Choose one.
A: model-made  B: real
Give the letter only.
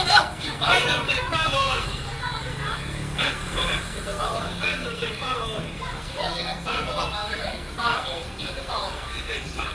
A